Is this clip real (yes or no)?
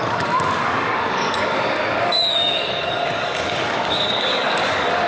no